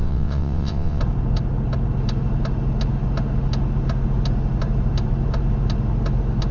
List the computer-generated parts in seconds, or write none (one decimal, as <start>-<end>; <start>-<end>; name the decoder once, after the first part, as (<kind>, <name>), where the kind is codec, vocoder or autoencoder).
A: 0.0-1.0 (vocoder, WaveNeXt)